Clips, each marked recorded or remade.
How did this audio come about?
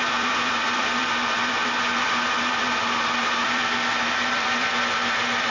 remade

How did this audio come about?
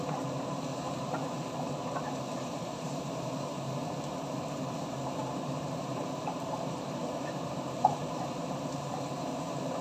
remade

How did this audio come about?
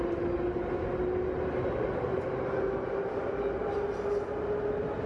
recorded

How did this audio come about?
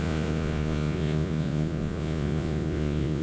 remade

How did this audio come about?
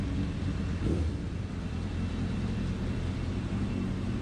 recorded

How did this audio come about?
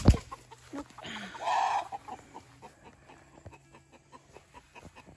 recorded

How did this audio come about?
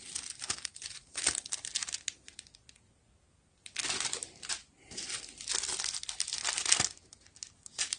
recorded